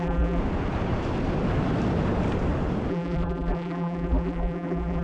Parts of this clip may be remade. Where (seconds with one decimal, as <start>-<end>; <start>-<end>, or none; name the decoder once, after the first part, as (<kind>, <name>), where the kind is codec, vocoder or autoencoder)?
0.0-0.4 (vocoder, BigVGAN v2); 2.9-5.0